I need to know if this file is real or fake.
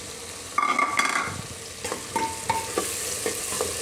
real